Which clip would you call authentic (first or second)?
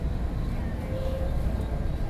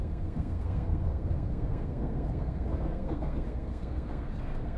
first